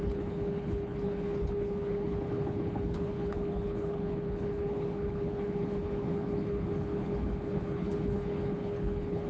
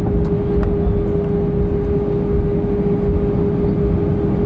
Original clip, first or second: second